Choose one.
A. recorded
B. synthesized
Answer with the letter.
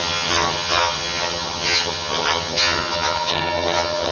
B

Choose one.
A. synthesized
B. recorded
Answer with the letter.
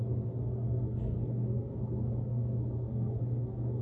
A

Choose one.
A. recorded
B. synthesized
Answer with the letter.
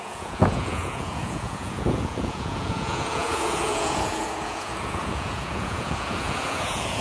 B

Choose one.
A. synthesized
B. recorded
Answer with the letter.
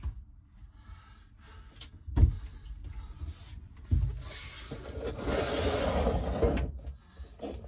B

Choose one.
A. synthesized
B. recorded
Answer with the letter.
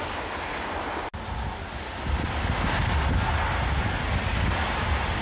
B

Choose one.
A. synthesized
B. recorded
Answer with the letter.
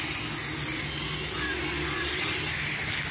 B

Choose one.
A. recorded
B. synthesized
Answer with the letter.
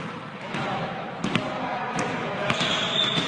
A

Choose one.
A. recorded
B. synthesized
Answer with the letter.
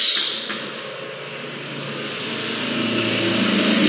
A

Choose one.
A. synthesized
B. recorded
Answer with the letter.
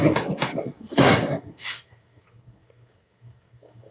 A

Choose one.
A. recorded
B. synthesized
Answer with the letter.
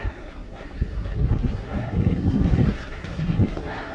B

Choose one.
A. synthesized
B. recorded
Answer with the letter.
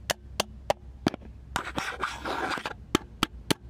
B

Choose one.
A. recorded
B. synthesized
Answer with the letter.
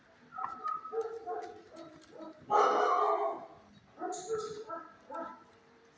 A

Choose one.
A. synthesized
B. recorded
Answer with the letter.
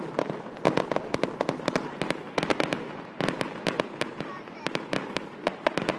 B